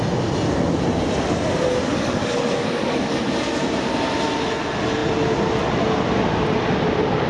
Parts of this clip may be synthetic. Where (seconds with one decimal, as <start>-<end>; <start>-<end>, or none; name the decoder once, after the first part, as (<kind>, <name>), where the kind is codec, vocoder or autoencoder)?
1.9-3.1 (codec, DAC)

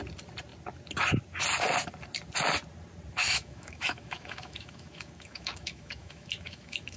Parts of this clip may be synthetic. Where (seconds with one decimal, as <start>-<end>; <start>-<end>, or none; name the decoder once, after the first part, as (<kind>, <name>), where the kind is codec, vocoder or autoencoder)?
3.2-7.0 (autoencoder, DAC-VAE)

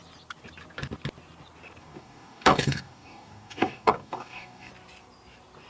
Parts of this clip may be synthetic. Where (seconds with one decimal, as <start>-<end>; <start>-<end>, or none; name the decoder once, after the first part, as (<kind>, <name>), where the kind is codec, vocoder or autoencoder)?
1.8-4.7 (codec, DAC)

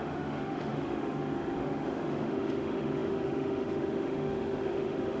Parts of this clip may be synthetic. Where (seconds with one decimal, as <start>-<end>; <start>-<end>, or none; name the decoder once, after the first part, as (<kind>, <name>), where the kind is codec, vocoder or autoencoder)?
0.0-5.2 (autoencoder, DAC-VAE)

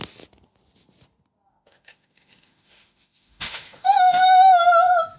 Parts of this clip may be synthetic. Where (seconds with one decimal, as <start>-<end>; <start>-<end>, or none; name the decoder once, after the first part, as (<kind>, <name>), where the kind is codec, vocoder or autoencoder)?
1.5-4.6 (autoencoder, DAC-VAE)

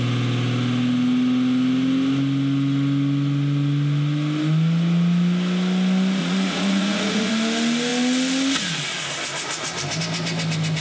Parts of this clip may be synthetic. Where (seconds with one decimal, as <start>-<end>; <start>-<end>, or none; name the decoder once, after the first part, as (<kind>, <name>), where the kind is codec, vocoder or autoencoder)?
6.2-7.3 (vocoder, Vocos)

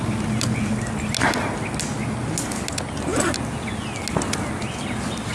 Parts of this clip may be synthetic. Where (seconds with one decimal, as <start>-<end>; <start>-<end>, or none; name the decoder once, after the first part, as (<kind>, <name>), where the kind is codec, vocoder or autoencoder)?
none

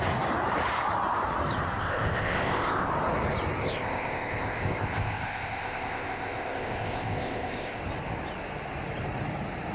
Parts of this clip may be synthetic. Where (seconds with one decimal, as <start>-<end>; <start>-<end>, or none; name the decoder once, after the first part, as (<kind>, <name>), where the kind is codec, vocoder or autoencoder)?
1.8-2.9 (codec, ZipCodec); 3.6-7.8